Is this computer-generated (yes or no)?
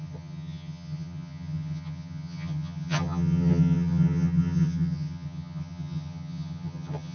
yes